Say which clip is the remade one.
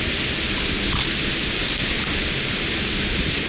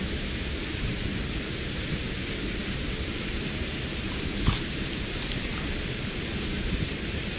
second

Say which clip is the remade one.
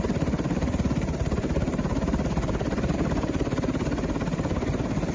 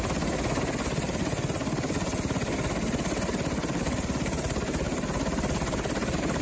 first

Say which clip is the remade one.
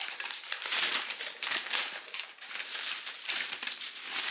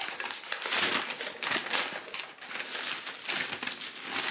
first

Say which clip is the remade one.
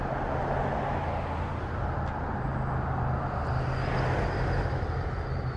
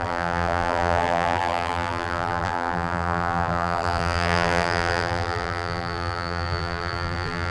second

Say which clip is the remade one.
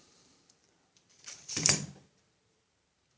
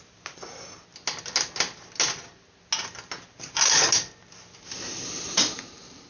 first